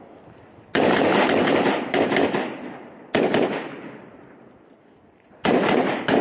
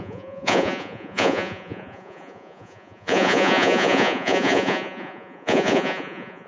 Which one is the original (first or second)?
first